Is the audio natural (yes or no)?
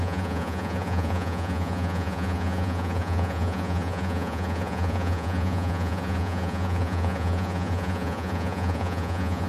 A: no